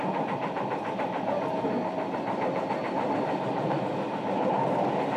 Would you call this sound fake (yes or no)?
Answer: yes